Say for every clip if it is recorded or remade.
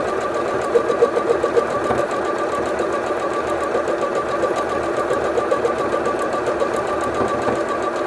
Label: recorded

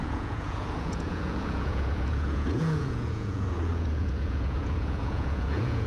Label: remade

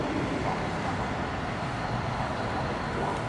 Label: recorded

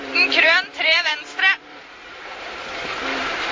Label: remade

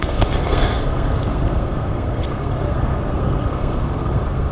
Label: remade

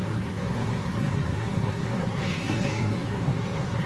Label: remade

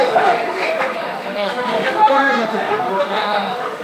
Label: remade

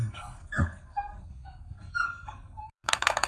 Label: remade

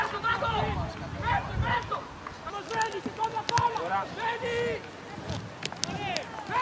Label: recorded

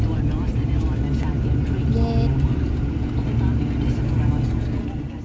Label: recorded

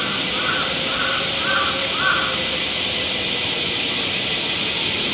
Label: remade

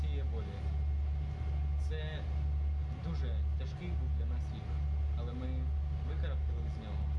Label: recorded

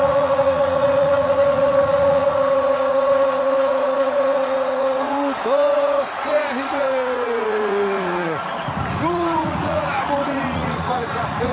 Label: remade